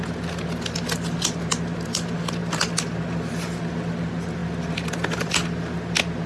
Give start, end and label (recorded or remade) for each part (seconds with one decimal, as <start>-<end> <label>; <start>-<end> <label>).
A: 0.0-6.3 recorded